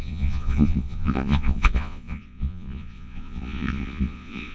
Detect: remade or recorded remade